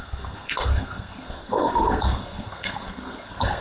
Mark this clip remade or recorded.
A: remade